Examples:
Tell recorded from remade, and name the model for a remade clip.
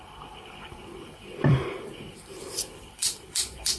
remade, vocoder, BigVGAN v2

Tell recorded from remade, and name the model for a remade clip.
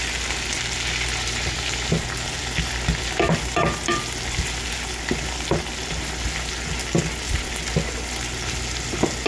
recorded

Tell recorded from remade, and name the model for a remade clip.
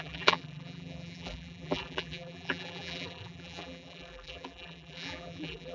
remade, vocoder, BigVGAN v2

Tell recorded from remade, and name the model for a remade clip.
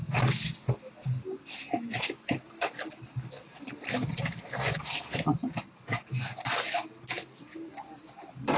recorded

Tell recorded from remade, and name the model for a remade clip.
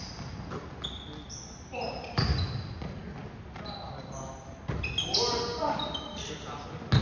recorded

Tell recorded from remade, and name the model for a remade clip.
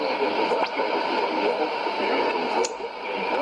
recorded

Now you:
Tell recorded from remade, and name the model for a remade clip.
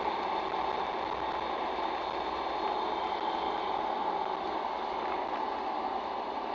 recorded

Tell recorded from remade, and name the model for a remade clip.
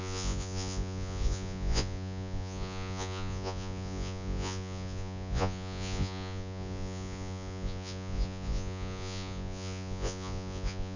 remade, vocoder, Vocos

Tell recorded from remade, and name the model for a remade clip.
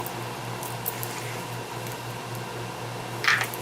recorded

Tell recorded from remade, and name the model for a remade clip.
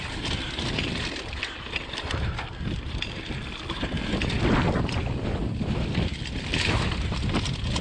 recorded